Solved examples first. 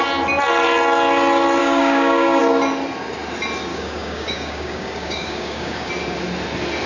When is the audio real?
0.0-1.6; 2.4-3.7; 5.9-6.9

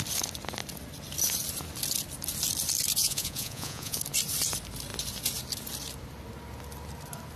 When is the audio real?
0.0-3.0; 4.0-7.4

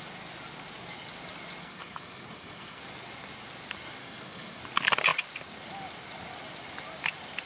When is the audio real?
0.0-1.6; 2.8-4.0; 4.6-7.5

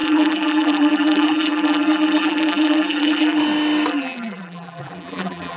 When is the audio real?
3.4-3.9

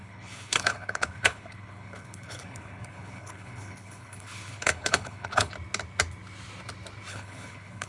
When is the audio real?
5.5-7.1

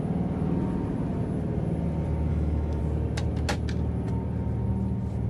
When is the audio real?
0.0-2.3; 2.8-5.3

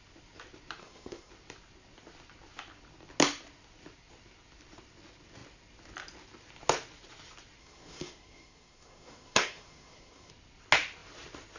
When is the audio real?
0.0-0.8; 1.3-7.6; 10.3-11.6